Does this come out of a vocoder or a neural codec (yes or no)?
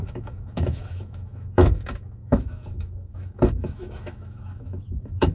yes